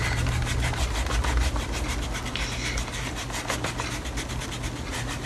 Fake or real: real